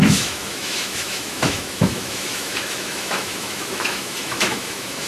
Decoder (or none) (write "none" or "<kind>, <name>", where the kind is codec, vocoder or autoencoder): autoencoder, DAC-VAE